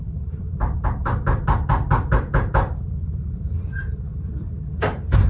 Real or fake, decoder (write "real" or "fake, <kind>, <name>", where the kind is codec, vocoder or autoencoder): fake, vocoder, BigVGAN v2